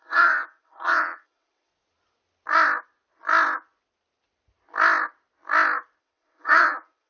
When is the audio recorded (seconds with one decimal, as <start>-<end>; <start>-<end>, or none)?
1.7-6.0